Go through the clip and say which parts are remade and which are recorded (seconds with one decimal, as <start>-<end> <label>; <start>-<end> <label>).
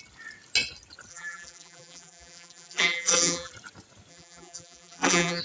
0.0-1.1 recorded; 1.1-3.5 remade; 3.5-4.1 recorded; 4.1-5.4 remade